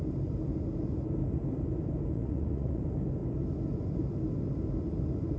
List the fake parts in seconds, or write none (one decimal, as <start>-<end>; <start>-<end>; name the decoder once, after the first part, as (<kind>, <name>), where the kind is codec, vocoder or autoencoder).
2.1-2.8 (vocoder, Vocos)